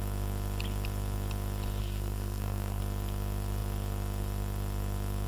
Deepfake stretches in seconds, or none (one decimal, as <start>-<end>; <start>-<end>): 1.8-2.8